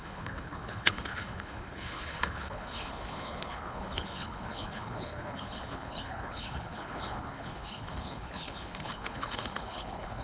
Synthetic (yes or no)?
yes